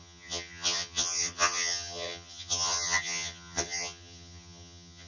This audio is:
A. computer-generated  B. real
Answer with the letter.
A